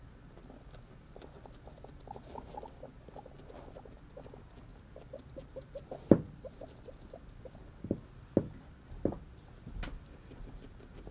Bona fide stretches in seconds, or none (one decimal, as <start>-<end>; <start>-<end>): 0.0-4.7; 7.6-11.1